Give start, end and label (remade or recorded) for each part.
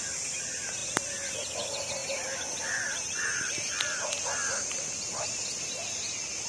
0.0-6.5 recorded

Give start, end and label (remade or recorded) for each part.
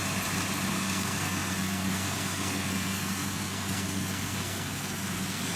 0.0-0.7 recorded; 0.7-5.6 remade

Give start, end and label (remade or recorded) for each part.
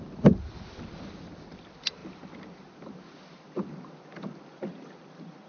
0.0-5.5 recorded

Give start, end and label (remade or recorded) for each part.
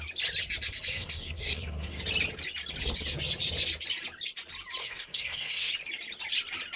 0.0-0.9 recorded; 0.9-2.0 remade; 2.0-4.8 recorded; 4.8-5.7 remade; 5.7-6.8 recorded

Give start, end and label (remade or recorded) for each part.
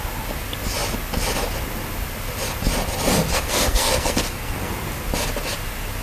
0.0-3.3 recorded; 3.3-4.7 remade; 4.7-6.0 recorded